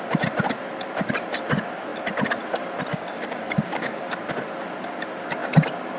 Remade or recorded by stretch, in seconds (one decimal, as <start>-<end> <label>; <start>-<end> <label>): 0.0-2.9 recorded; 2.9-4.0 remade; 4.0-6.0 recorded

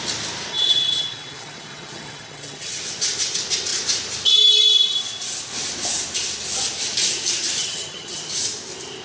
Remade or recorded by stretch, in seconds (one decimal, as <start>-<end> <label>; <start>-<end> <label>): 0.0-0.5 recorded; 0.5-2.8 remade; 2.8-7.6 recorded; 7.6-8.2 remade; 8.2-9.0 recorded

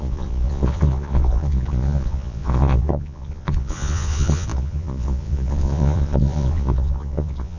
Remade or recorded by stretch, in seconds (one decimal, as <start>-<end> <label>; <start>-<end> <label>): 0.0-7.6 remade

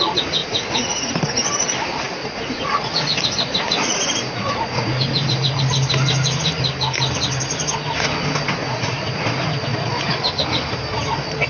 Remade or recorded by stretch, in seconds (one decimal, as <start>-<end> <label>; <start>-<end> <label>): 0.0-0.4 recorded; 0.4-1.1 remade; 1.1-2.2 recorded; 2.2-5.6 remade; 5.6-8.6 recorded; 8.6-9.5 remade; 9.5-11.5 recorded

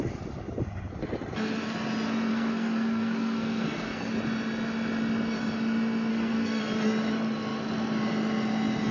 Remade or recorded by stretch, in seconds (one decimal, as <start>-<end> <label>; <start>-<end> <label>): 0.0-2.3 recorded; 2.3-4.1 remade; 4.1-6.1 recorded; 6.1-6.6 remade; 6.6-8.9 recorded

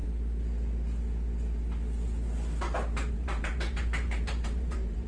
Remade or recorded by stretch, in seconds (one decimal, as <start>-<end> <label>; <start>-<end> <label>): 0.0-3.1 recorded; 3.1-5.1 remade

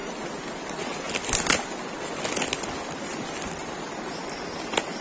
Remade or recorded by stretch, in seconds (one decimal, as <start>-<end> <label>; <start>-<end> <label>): 0.0-5.0 recorded